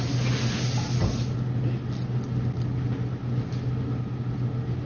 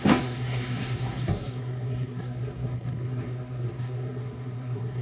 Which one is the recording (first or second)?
first